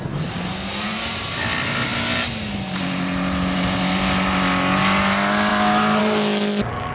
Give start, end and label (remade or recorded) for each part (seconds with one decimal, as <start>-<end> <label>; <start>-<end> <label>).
0.0-6.9 recorded